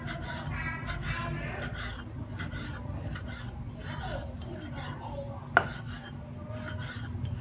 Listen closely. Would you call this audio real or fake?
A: real